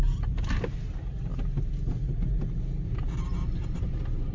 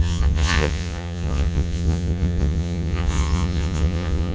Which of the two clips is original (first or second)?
first